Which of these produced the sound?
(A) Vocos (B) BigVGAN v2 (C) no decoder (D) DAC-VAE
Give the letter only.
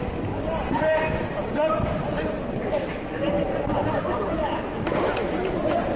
C